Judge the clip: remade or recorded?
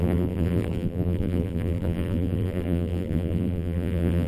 remade